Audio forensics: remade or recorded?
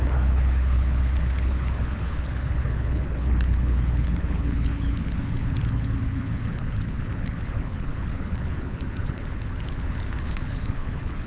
remade